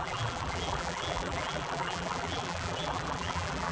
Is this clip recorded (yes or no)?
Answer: no